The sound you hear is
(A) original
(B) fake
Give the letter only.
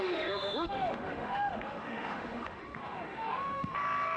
B